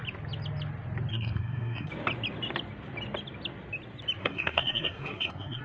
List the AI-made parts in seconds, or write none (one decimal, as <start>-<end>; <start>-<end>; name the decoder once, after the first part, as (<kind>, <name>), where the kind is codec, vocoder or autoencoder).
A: 1.1-1.9 (codec, SNAC); 4.2-5.6